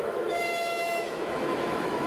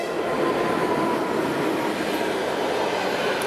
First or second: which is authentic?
second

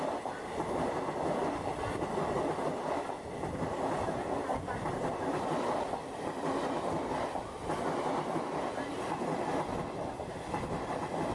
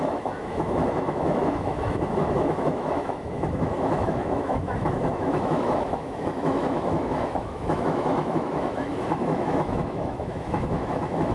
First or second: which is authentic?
first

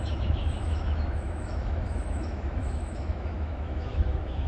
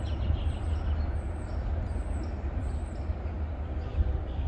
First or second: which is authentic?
second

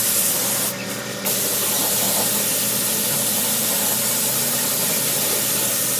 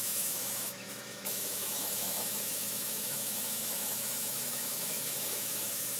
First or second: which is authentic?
first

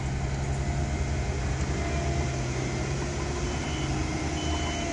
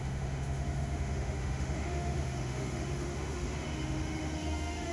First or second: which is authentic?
first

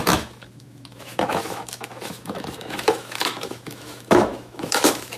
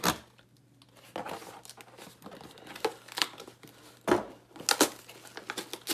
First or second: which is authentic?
second